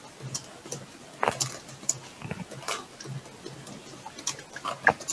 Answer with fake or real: real